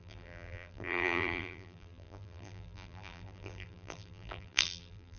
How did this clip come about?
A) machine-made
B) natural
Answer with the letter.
A